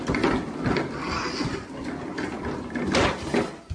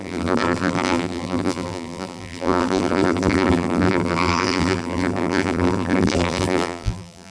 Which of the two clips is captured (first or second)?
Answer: first